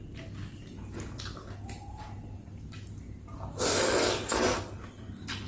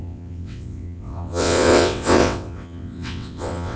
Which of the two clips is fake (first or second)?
second